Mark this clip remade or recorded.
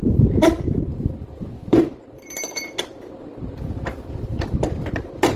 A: remade